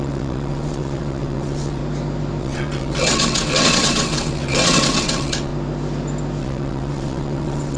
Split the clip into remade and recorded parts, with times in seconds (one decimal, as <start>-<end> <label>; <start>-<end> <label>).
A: 0.0-1.8 remade; 1.8-2.4 recorded; 2.4-5.5 remade; 5.5-6.4 recorded; 6.4-7.8 remade